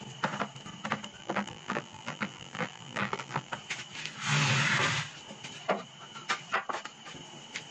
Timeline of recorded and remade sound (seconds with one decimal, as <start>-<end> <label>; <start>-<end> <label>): 0.0-1.2 recorded; 1.2-3.5 remade; 3.5-7.7 recorded